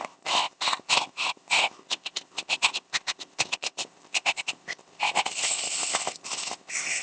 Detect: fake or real fake